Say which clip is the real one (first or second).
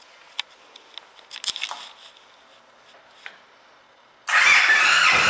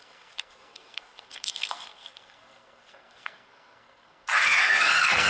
first